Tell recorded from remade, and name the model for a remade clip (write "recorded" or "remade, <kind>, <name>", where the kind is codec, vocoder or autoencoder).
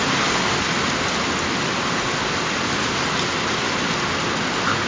recorded